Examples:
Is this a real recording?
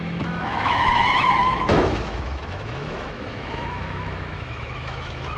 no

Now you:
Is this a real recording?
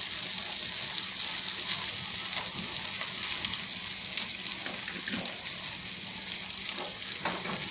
yes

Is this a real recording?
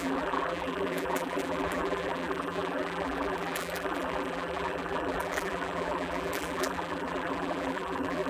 no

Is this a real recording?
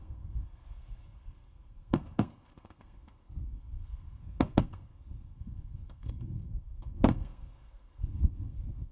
no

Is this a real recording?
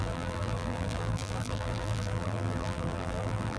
no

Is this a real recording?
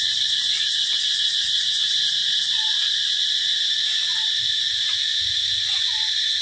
yes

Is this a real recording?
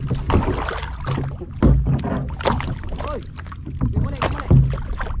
yes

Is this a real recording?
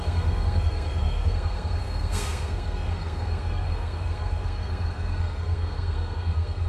no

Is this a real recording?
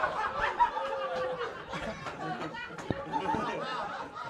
yes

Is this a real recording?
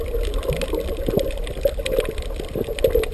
yes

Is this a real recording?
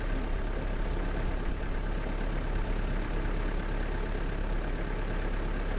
yes